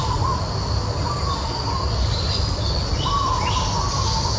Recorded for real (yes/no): yes